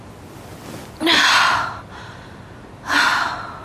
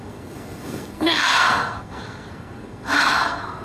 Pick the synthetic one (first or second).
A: second